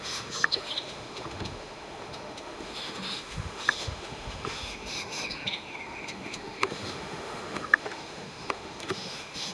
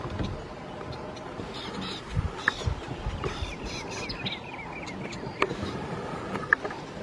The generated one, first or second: first